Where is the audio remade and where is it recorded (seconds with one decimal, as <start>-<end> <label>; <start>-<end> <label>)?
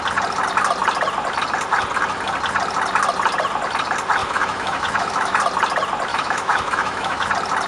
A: 0.0-4.2 recorded; 4.2-5.4 remade; 5.4-6.1 recorded; 6.1-7.3 remade; 7.3-7.7 recorded